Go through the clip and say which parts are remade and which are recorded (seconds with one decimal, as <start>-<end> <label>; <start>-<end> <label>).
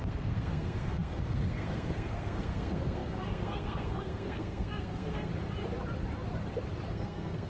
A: 0.0-5.3 remade; 5.3-6.9 recorded; 6.9-7.5 remade